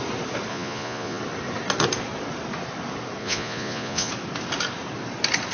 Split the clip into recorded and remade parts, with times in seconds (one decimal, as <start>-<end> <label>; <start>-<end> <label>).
0.0-0.5 recorded; 0.5-1.2 remade; 1.2-3.2 recorded; 3.2-4.1 remade; 4.1-5.5 recorded